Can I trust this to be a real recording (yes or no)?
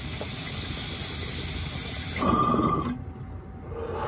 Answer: yes